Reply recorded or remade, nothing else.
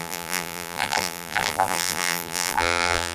remade